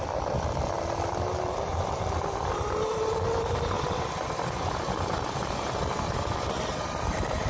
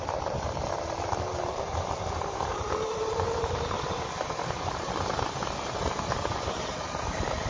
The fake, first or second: second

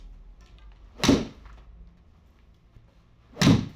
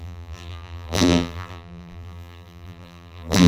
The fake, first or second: second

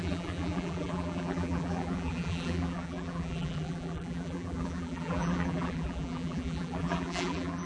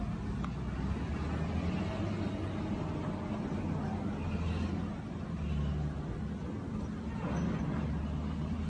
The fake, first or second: first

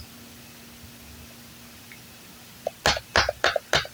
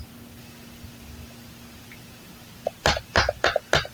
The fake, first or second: second